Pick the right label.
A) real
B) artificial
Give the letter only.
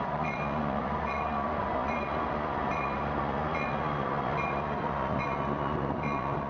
B